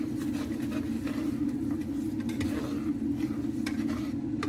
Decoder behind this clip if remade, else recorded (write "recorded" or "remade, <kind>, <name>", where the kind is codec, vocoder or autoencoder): recorded